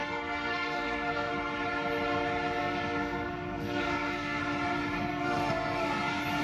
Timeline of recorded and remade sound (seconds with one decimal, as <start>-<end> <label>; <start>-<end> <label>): 0.0-1.3 remade; 1.3-2.6 recorded; 2.6-4.4 remade; 4.4-5.1 recorded; 5.1-5.9 remade; 5.9-6.4 recorded